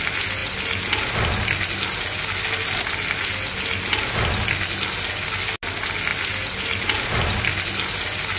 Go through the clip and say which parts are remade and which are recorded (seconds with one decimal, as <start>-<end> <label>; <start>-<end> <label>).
0.0-8.4 recorded